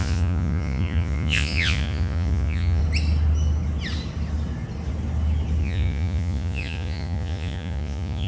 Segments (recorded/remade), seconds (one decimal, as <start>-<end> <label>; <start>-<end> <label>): 0.0-2.8 remade; 2.8-5.6 recorded; 5.6-8.3 remade